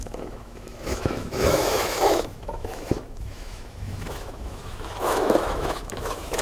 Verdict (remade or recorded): remade